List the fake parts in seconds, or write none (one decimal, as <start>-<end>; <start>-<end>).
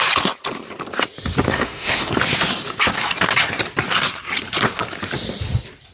1.5-2.1